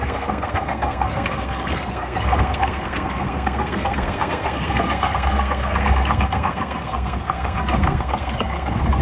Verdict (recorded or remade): remade